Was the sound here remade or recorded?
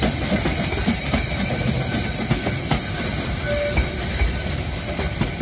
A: recorded